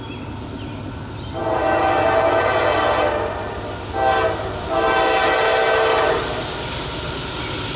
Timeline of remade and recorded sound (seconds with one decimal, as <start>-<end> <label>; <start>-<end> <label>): 0.0-7.8 recorded